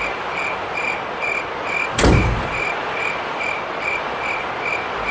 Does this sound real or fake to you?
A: fake